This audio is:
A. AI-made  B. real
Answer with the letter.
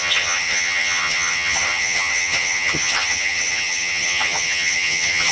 A